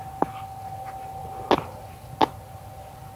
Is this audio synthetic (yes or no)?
no